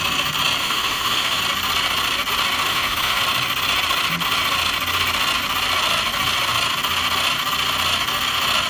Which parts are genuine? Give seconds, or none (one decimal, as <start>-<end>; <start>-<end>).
0.0-0.6; 1.4-2.7; 3.2-8.7